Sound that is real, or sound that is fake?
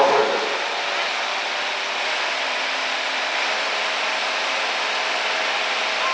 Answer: real